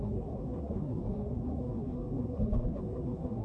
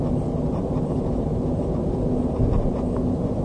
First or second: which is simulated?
first